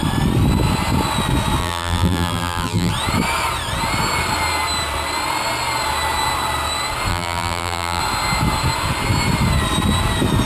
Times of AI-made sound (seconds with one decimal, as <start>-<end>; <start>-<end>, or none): 1.6-2.9; 7.1-8.0